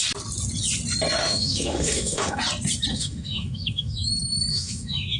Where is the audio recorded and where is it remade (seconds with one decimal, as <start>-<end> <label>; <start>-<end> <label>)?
0.0-1.2 recorded; 1.2-2.4 remade; 2.4-2.9 recorded; 2.9-4.1 remade; 4.1-4.5 recorded; 4.5-5.2 remade